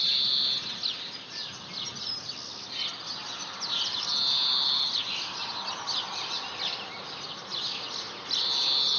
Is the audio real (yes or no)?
yes